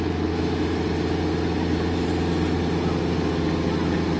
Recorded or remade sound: recorded